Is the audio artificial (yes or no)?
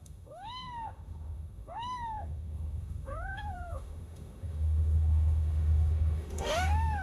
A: yes